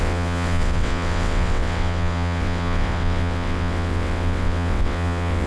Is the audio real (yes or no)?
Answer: no